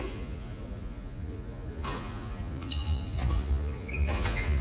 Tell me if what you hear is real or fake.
fake